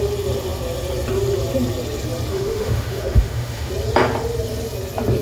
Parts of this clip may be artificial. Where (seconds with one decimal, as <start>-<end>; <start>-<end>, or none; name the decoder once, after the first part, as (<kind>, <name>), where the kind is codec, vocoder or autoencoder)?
2.3-3.7 (autoencoder, DAC-VAE)